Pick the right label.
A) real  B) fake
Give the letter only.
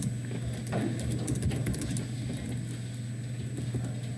A